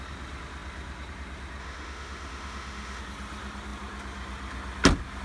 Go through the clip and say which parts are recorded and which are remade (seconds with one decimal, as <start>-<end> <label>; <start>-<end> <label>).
0.0-1.6 recorded; 1.6-3.0 remade; 3.0-5.2 recorded